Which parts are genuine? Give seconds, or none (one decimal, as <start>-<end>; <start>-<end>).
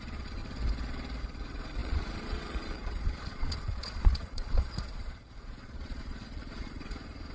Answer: 0.4-1.2